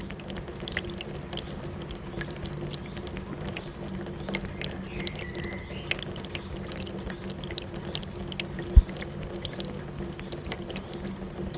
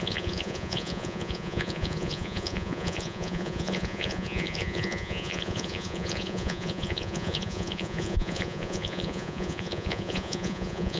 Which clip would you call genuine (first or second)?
first